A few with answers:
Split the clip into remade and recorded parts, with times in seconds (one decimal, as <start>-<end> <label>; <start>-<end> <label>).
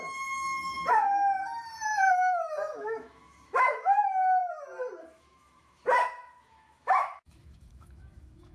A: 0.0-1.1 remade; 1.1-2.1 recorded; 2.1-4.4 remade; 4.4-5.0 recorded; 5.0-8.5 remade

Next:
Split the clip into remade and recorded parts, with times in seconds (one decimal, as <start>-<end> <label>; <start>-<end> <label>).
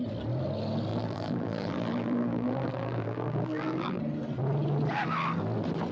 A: 0.0-0.9 recorded; 0.9-4.0 remade; 4.0-5.9 recorded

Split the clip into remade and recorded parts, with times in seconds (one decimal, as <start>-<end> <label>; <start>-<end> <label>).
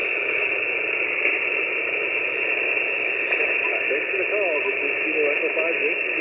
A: 0.0-6.2 recorded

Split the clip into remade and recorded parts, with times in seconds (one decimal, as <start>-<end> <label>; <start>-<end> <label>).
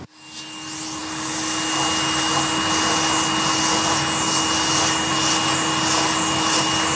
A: 0.0-7.0 recorded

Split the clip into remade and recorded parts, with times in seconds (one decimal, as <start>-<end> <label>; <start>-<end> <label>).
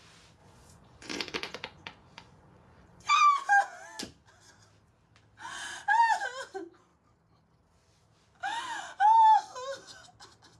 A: 0.0-0.4 recorded; 0.4-3.1 remade; 3.1-10.6 recorded